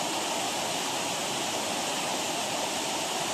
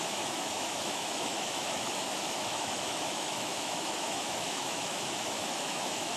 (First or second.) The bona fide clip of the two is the first